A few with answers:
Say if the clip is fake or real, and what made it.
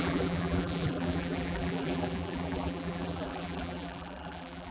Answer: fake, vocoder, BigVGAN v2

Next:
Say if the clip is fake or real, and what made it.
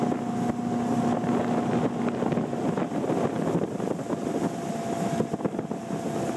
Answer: real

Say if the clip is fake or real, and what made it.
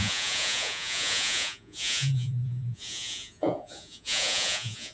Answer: fake, vocoder, Vocos